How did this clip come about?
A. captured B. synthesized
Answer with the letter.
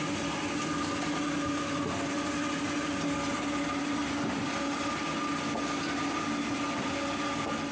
A